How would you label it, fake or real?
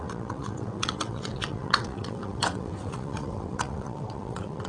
fake